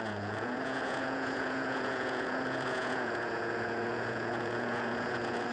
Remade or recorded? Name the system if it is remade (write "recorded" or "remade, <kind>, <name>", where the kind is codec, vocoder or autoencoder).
remade, vocoder, Vocos